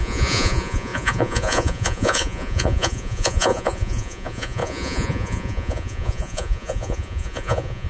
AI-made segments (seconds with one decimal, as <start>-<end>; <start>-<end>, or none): 0.0-7.9